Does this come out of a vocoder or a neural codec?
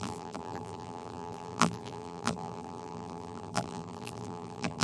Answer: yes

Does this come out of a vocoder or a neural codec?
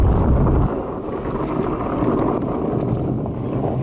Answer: no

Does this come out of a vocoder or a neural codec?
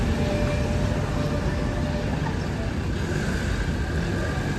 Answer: no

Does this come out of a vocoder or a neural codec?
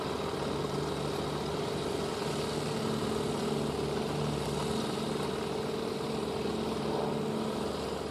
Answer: no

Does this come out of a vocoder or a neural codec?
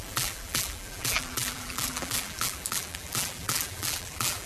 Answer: yes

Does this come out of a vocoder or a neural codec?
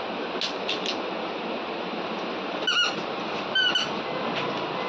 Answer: no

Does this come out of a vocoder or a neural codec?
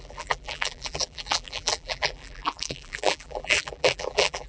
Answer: yes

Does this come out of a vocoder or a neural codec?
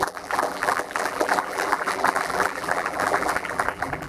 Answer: yes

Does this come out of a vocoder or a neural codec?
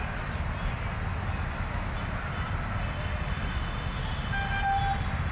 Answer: no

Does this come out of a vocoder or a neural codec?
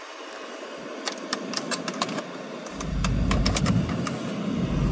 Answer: no